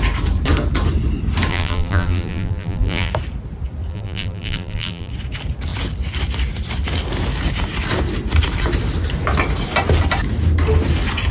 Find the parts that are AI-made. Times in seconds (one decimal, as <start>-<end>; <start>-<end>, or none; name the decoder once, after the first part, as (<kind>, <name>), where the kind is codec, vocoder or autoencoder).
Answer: 1.5-3.1 (vocoder, BigVGAN v2); 3.9-5.1